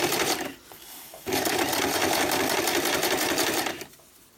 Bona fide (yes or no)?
no